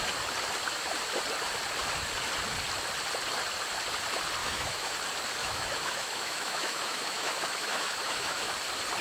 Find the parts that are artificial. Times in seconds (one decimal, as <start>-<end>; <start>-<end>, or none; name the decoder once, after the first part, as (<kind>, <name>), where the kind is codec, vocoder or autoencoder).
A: 4.4-4.9 (autoencoder, DAC-VAE); 5.4-8.5